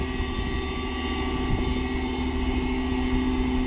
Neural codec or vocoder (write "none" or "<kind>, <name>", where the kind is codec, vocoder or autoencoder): none